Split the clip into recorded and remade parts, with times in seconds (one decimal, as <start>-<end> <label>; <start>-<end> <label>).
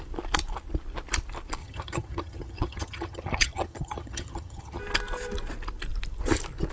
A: 0.0-1.6 recorded; 1.6-4.8 remade; 4.8-6.7 recorded